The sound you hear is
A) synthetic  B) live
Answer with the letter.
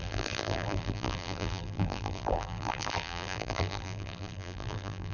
A